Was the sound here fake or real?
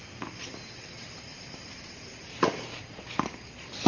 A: real